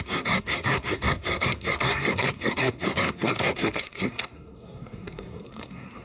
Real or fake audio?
fake